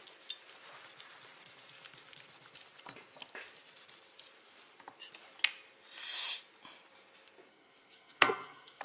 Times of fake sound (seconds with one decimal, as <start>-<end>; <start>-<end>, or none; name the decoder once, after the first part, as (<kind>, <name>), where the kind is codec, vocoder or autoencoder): 7.5-8.8 (codec, SNAC)